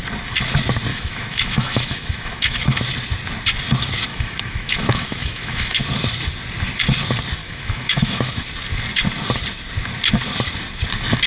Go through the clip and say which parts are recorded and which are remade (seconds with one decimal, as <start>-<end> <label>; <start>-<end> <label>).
0.0-0.9 recorded; 0.9-2.8 remade; 2.8-4.1 recorded; 4.1-5.8 remade; 5.8-7.4 recorded; 7.4-8.4 remade; 8.4-11.3 recorded